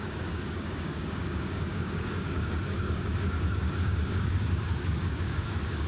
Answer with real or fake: fake